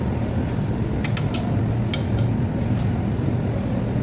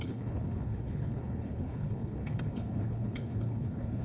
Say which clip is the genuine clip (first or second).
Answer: first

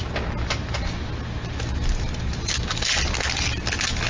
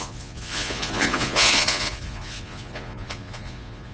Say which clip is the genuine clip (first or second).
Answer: first